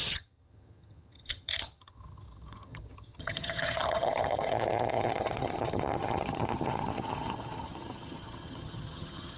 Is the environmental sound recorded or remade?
remade